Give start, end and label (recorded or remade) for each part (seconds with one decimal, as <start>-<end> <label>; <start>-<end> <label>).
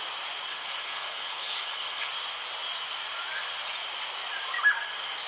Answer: 0.0-0.5 recorded; 0.5-2.1 remade; 2.1-5.3 recorded